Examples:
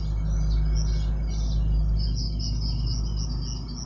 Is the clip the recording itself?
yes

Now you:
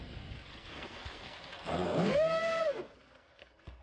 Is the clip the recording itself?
no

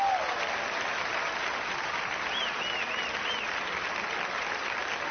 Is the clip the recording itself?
yes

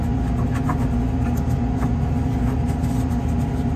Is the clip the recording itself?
yes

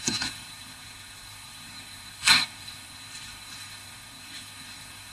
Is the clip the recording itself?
no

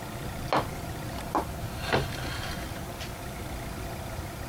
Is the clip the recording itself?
yes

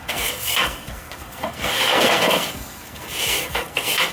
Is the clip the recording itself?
no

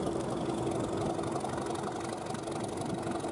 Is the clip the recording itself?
yes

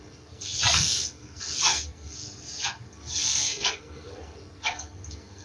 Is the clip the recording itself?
no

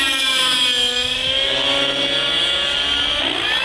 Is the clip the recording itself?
yes